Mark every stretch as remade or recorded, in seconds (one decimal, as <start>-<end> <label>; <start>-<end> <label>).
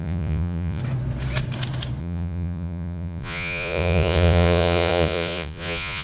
0.0-0.8 remade; 0.8-2.0 recorded; 2.0-6.0 remade